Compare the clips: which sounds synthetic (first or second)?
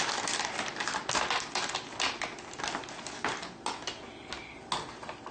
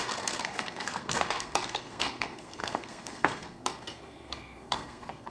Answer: second